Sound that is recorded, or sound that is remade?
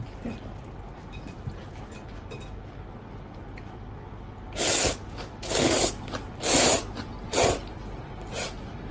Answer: recorded